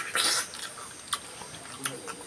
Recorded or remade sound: recorded